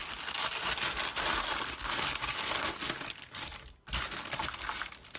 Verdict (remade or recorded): recorded